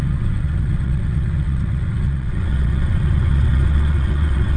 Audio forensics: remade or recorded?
remade